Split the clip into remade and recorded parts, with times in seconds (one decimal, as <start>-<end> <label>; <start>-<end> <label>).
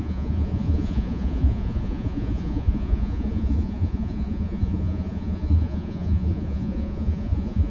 0.0-7.7 remade